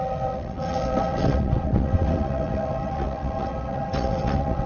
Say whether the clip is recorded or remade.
remade